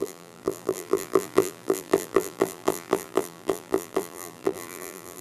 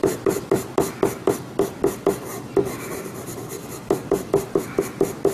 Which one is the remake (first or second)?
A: first